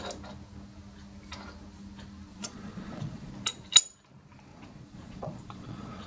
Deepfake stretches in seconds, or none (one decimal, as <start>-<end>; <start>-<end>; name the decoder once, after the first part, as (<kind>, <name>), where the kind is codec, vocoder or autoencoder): 2.3-3.3 (vocoder, Vocos); 4.5-6.1